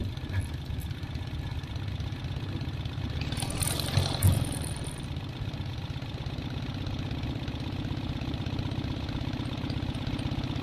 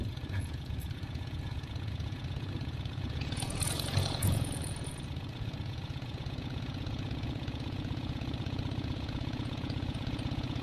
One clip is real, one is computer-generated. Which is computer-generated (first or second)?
second